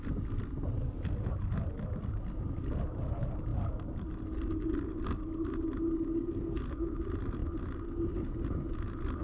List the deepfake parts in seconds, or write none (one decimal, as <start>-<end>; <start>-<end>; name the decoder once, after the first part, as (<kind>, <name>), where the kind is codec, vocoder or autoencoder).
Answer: none